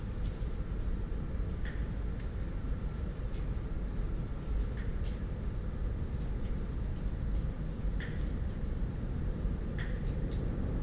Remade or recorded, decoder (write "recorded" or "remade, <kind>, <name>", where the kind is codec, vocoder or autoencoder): recorded